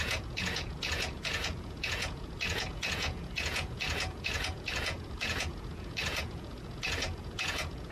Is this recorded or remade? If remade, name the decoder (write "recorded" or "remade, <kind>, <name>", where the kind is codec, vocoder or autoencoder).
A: remade, vocoder, Vocos